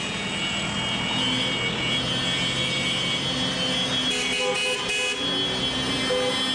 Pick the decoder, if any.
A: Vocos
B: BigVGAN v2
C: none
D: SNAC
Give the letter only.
C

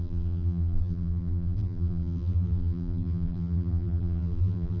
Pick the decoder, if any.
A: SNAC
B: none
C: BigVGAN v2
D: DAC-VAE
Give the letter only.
C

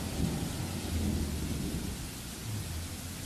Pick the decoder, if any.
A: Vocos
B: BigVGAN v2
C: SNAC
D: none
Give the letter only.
D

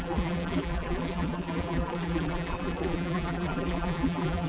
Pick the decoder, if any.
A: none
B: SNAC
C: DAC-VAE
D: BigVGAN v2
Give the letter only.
D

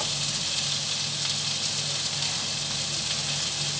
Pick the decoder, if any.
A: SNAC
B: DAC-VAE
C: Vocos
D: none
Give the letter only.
D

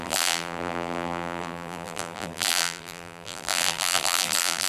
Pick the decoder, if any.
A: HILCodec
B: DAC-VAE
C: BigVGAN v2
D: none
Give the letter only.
C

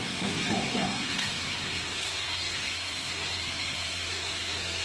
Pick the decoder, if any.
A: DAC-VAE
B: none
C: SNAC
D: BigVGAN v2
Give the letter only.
C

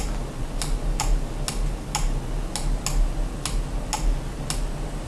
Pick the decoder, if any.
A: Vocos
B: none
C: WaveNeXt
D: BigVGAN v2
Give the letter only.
B